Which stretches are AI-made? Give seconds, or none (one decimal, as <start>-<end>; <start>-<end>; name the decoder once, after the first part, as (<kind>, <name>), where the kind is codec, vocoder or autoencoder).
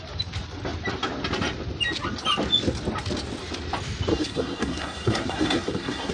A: 4.1-6.1 (codec, SNAC)